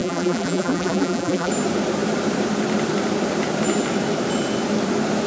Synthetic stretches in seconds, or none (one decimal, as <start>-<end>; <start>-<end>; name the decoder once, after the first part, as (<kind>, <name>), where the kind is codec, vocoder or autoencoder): 0.0-1.5 (vocoder, BigVGAN v2)